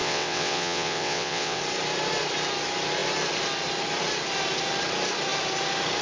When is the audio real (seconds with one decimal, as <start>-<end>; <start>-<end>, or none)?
1.6-6.0